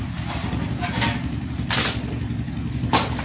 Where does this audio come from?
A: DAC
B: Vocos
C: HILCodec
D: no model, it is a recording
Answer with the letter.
D